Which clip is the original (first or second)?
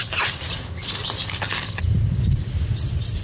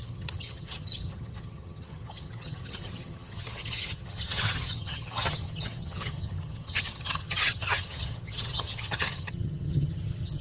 first